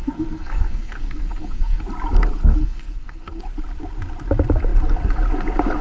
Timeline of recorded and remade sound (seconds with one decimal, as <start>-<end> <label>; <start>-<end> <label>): 0.0-1.8 remade; 1.8-2.6 recorded; 2.6-3.4 remade; 3.4-5.8 recorded